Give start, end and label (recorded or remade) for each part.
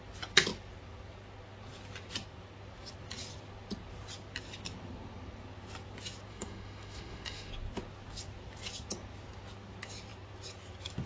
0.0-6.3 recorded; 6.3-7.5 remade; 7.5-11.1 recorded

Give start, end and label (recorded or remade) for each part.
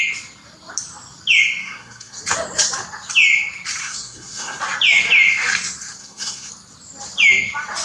0.0-1.6 recorded; 1.6-2.2 remade; 2.2-3.8 recorded; 3.8-4.6 remade; 4.6-6.0 recorded; 6.0-6.5 remade; 6.5-7.8 recorded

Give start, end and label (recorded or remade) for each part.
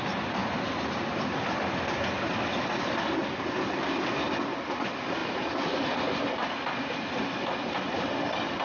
0.0-8.6 recorded